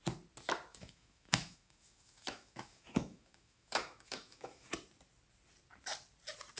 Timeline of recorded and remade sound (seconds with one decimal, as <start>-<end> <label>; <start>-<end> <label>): 0.0-0.7 recorded; 0.7-4.7 remade; 4.7-6.6 recorded